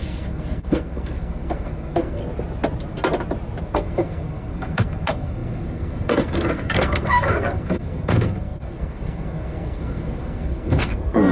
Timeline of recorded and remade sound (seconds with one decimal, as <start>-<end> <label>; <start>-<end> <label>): 0.0-2.2 remade; 2.2-3.6 recorded; 3.6-11.3 remade

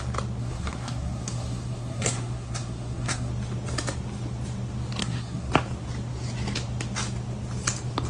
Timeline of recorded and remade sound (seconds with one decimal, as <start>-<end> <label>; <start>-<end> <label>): 0.0-0.4 recorded; 0.4-3.3 remade; 3.3-5.0 recorded; 5.0-5.5 remade; 5.5-8.1 recorded

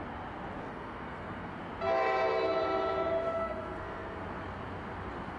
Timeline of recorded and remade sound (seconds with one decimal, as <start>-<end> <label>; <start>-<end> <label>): 0.0-0.6 recorded; 0.6-1.5 remade; 1.5-3.2 recorded; 3.2-4.2 remade; 4.2-5.4 recorded

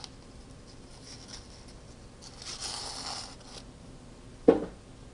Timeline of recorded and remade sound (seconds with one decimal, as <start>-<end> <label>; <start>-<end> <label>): 0.0-5.1 recorded

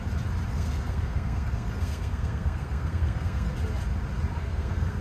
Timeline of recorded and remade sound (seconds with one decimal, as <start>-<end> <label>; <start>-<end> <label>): 0.0-0.5 recorded; 0.5-3.5 remade; 3.5-4.4 recorded; 4.4-5.0 remade

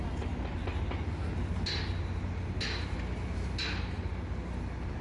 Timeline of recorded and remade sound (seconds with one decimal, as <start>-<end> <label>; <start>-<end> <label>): 0.0-5.0 recorded

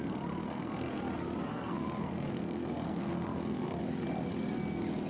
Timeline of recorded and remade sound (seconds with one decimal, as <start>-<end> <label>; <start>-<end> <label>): 0.0-0.4 recorded; 0.4-1.0 remade; 1.0-1.5 recorded; 1.5-3.8 remade; 3.8-5.1 recorded

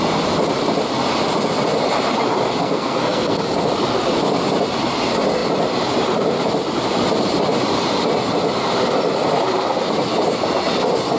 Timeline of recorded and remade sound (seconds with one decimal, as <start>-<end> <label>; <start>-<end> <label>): 0.0-2.6 recorded; 2.6-3.4 remade; 3.4-11.2 recorded